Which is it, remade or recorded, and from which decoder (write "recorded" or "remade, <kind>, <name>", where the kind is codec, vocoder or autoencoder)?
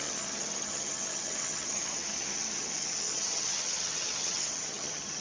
remade, vocoder, HiFi-GAN